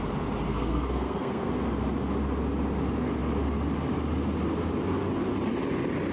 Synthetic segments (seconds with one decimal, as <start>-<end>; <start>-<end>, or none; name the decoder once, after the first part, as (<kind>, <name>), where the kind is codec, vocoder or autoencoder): 0.5-1.5 (codec, SNAC)